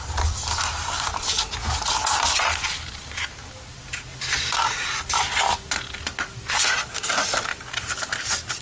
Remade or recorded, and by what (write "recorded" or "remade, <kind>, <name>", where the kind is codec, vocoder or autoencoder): recorded